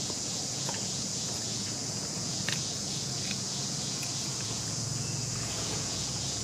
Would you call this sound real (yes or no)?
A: no